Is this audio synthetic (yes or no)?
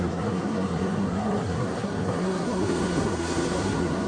yes